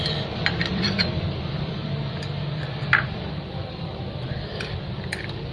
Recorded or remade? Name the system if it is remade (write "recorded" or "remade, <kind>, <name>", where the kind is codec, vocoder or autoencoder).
remade, vocoder, BigVGAN v2